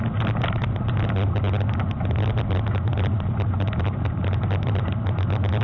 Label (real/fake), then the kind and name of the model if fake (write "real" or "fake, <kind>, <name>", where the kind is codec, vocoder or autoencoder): real